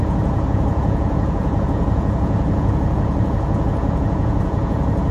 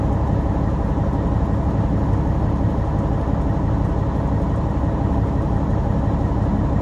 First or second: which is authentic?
second